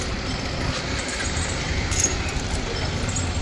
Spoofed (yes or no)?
yes